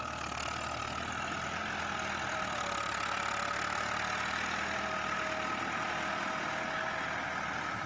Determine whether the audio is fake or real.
real